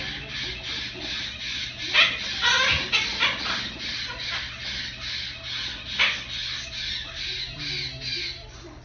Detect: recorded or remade recorded